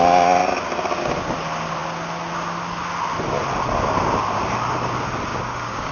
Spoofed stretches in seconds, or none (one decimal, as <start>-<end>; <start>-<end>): 5.3-5.9